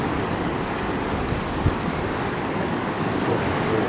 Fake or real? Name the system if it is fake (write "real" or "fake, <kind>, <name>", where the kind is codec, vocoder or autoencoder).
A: fake, codec, DAC